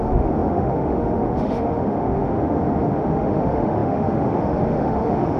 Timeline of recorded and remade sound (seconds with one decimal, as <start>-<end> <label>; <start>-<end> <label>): 0.0-5.4 remade